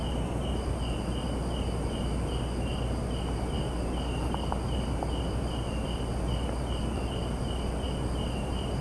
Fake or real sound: real